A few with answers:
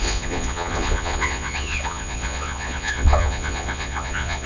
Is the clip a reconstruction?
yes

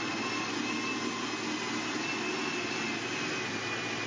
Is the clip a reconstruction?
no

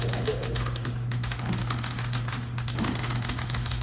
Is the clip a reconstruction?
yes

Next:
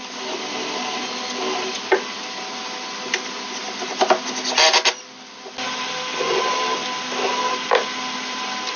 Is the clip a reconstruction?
no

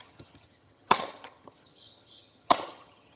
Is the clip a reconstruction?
yes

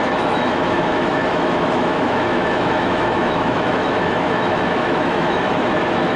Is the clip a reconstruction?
yes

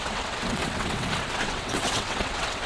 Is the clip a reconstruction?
yes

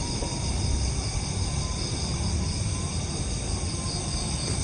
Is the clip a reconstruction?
no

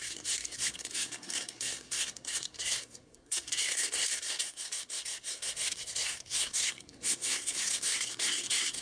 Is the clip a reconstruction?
yes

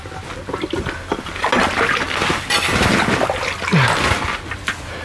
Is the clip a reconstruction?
no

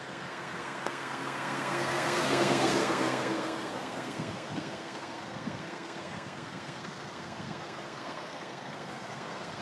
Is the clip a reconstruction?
yes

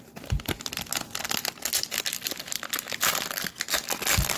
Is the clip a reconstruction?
no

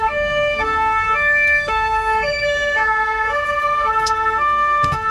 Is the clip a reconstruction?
yes